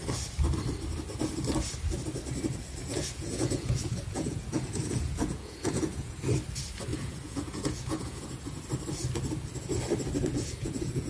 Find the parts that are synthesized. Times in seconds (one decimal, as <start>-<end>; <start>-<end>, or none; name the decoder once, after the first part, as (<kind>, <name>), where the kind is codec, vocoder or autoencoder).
2.8-6.3 (vocoder, Vocos); 6.9-8.6; 10.3-11.1